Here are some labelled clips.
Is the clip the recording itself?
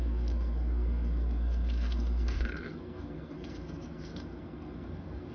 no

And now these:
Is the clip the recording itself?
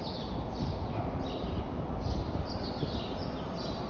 yes